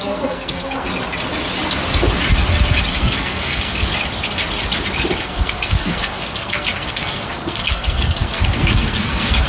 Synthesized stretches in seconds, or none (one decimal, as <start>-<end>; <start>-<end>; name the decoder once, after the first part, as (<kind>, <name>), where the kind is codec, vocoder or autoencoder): 0.0-0.9 (codec, SNAC); 2.9-3.9; 5.2-9.5